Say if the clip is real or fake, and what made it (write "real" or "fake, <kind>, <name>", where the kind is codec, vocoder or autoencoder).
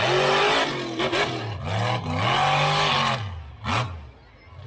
real